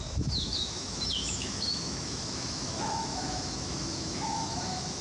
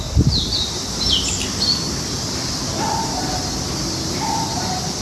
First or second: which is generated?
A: first